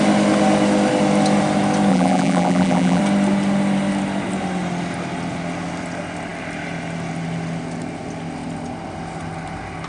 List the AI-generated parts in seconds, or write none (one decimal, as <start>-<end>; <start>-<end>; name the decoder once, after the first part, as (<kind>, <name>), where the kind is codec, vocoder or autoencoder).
1.9-3.0 (vocoder, BigVGAN v2)